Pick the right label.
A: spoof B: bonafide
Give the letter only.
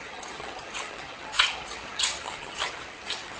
A